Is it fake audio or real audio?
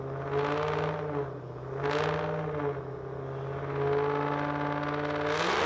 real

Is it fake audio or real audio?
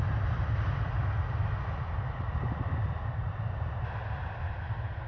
real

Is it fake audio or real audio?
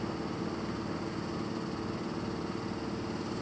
real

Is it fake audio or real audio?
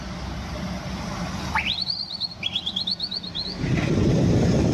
real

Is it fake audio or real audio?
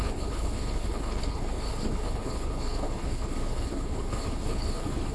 fake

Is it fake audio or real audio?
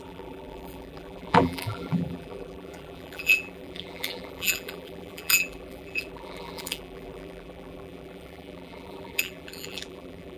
fake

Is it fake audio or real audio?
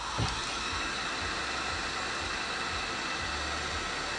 real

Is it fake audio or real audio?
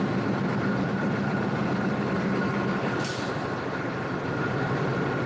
fake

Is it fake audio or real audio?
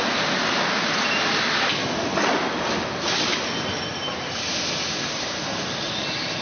real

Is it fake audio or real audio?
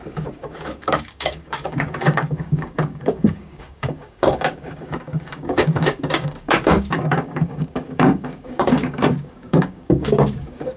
fake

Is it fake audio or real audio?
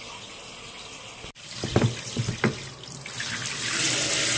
real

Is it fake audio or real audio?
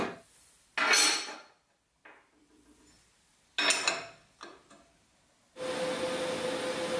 real